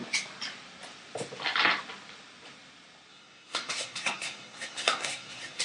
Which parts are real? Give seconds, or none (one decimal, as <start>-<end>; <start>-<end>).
0.0-3.1